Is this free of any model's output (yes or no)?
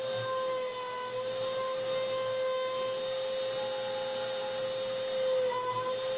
yes